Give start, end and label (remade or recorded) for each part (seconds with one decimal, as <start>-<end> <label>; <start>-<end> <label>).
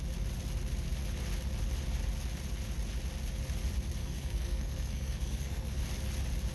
0.0-4.0 recorded; 4.0-5.8 remade; 5.8-6.5 recorded